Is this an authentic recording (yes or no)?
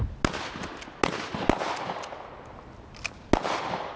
yes